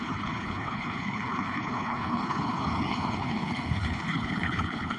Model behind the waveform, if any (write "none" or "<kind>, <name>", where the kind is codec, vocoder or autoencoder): codec, HILCodec